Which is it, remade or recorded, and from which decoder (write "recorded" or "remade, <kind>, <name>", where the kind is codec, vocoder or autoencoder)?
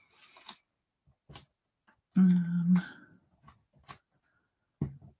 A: recorded